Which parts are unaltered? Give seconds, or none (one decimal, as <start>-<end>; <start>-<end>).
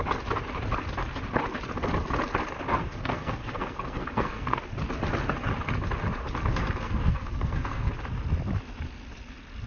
0.0-2.8; 4.6-6.5; 7.9-9.7